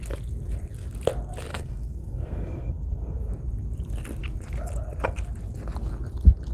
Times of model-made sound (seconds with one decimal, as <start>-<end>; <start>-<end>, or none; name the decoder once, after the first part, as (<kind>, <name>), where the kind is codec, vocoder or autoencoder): 1.5-3.3 (codec, SNAC)